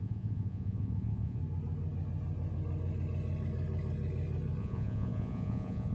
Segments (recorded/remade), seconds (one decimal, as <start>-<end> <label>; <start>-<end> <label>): 0.0-1.4 remade; 1.4-4.6 recorded; 4.6-5.9 remade